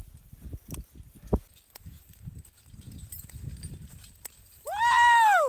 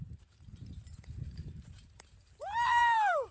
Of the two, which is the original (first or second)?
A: first